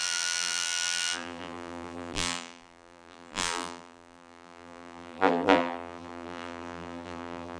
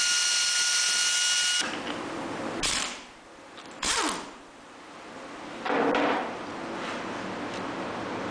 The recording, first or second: second